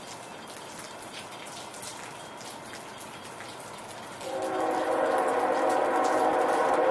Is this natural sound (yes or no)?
yes